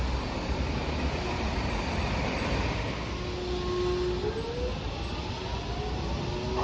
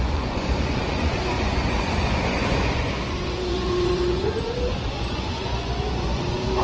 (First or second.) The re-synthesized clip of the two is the second